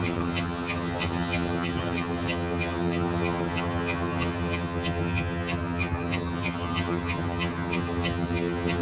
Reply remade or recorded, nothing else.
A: remade